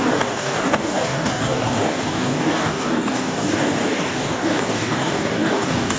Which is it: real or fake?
fake